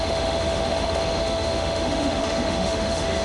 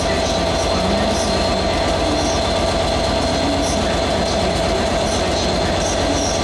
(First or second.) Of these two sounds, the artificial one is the first